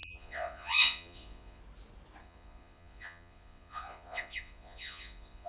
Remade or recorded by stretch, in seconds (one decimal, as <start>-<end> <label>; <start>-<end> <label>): 0.0-1.6 remade; 1.6-2.2 recorded; 2.2-5.5 remade